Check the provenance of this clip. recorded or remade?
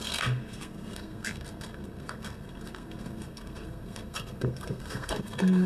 remade